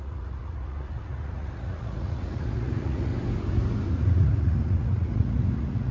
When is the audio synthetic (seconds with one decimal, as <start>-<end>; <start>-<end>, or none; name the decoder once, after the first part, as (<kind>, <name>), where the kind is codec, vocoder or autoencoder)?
0.0-3.1 (vocoder, Vocos); 3.9-5.9